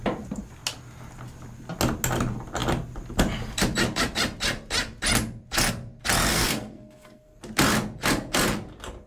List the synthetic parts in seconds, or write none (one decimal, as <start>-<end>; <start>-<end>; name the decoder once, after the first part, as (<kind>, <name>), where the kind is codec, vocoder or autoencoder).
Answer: 6.3-7.4 (codec, SNAC)